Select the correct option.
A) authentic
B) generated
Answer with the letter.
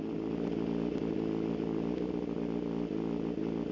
A